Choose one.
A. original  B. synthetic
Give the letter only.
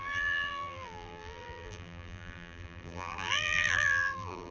B